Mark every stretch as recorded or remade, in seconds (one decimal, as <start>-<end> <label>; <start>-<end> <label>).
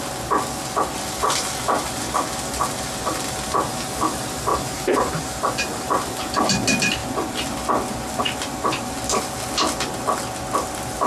0.0-4.5 recorded; 4.5-5.1 remade; 5.1-11.1 recorded